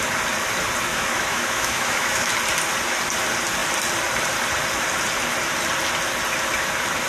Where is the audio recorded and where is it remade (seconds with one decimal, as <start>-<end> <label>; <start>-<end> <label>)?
0.0-0.9 recorded; 0.9-2.3 remade; 2.3-7.1 recorded

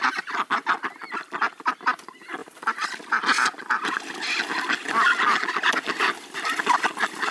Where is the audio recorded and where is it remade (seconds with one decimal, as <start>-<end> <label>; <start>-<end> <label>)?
0.0-7.3 recorded

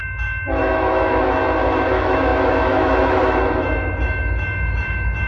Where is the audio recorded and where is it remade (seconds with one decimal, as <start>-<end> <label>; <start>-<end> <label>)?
0.0-5.3 remade